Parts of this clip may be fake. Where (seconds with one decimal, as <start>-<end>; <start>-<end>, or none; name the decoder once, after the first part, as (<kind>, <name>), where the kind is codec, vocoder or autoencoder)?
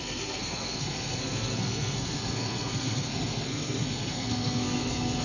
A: 0.0-5.2 (codec, SNAC)